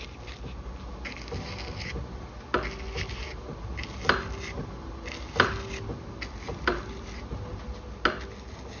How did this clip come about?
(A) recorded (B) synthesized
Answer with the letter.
A